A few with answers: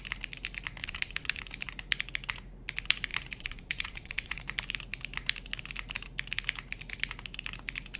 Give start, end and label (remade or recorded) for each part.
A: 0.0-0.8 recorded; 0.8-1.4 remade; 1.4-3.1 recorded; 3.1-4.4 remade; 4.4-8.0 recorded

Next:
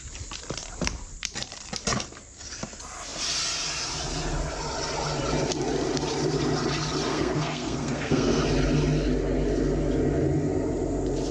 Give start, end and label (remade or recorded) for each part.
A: 0.0-7.1 recorded; 7.1-8.4 remade; 8.4-11.3 recorded

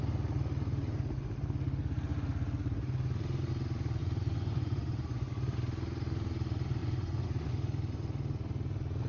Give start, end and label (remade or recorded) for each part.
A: 0.0-4.0 recorded; 4.0-5.3 remade; 5.3-6.8 recorded; 6.8-7.5 remade; 7.5-9.1 recorded

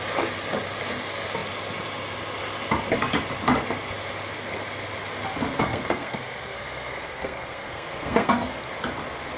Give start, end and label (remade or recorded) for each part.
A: 0.0-5.6 recorded; 5.6-8.7 remade; 8.7-9.4 recorded